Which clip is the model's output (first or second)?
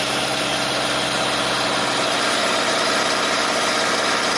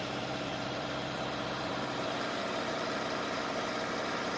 second